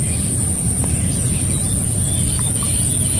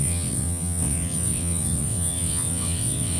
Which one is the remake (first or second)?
second